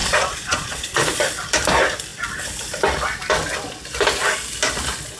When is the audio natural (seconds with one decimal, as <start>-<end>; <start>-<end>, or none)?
1.2-5.2